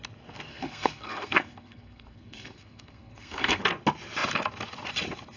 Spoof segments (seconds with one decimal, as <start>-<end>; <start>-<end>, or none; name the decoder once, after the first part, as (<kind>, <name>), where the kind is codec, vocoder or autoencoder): 0.5-3.6 (codec, SNAC)